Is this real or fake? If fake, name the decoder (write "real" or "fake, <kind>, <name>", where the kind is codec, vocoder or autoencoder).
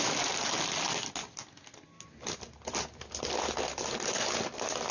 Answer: real